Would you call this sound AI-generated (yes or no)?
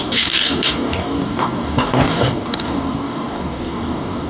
yes